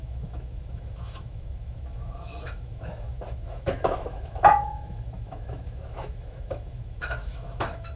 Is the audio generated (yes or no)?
yes